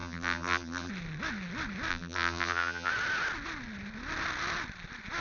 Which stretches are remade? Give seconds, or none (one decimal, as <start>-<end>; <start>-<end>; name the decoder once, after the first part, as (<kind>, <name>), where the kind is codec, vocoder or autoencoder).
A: 0.0-0.9 (vocoder, BigVGAN v2); 1.9-2.9